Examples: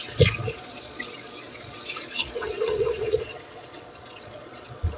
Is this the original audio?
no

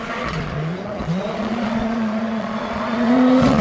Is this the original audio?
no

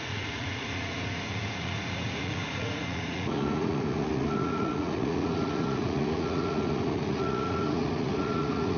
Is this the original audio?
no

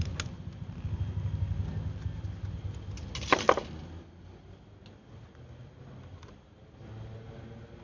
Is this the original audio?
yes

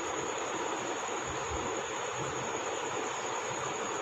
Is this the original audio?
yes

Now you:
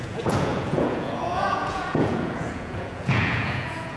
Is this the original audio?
no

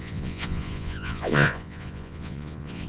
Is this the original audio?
no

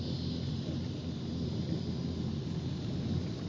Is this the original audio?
yes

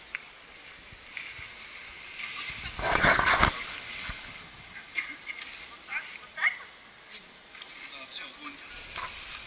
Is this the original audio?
yes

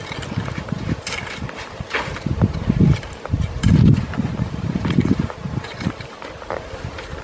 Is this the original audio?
yes